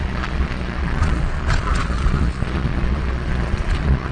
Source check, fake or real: fake